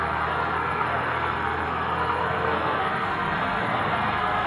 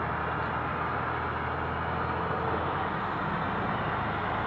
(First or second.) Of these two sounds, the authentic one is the second